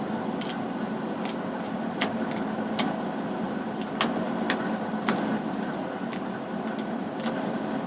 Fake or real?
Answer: real